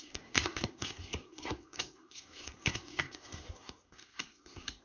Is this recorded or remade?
remade